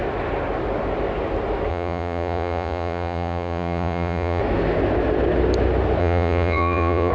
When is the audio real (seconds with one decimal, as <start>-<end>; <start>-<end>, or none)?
0.0-1.7; 4.4-6.0